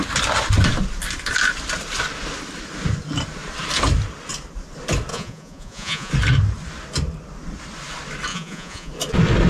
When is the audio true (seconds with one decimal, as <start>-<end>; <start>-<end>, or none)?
0.0-5.1; 6.1-8.3; 8.9-9.5